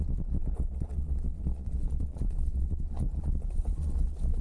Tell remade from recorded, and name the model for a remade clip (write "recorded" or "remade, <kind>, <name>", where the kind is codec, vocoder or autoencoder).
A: remade, vocoder, Vocos